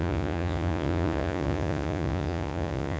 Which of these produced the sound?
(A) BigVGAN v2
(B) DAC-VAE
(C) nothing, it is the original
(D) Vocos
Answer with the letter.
D